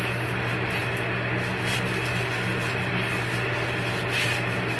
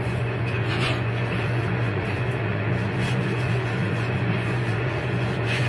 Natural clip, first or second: first